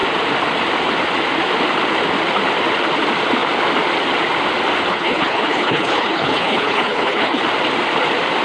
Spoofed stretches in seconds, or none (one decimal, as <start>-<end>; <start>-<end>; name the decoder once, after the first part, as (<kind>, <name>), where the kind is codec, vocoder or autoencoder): 4.9-7.4 (codec, HILCodec)

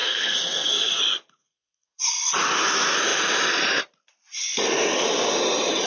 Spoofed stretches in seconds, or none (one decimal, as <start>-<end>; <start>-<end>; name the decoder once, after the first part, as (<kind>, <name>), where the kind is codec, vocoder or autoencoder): 0.0-1.0 (codec, SNAC); 1.4-2.1

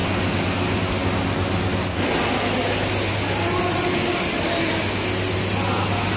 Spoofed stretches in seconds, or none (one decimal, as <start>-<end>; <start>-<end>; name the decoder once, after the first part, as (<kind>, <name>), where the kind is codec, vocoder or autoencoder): none

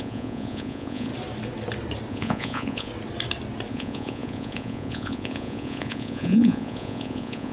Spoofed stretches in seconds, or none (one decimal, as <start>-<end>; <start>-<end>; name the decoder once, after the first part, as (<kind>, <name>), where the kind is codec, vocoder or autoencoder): 0.0-1.1 (vocoder, Vocos); 2.1-2.9; 3.7-7.5